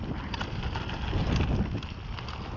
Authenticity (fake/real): real